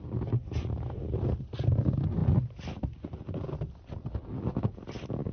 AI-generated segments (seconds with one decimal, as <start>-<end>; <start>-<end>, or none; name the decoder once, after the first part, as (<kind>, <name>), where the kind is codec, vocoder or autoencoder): none